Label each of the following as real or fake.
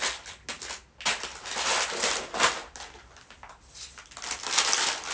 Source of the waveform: real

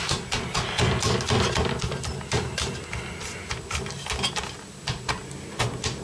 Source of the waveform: real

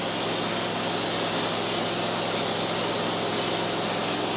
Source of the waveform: real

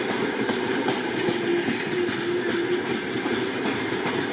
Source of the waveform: real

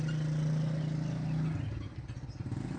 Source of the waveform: real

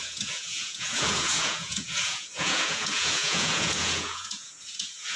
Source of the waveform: fake